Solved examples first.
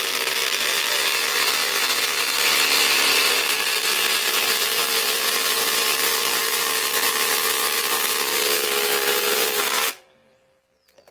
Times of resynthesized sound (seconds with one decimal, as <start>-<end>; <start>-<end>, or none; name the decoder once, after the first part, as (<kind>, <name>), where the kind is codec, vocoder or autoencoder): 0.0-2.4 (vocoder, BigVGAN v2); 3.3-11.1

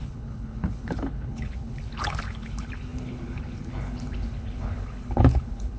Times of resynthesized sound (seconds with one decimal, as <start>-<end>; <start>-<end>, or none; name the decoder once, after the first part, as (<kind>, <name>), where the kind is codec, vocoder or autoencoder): 0.0-5.8 (codec, HILCodec)

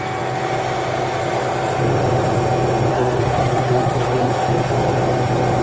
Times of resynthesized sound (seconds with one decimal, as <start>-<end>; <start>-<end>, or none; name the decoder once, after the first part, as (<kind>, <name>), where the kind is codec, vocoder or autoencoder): 2.9-4.3 (codec, SNAC)